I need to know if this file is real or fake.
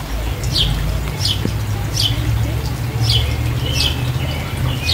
real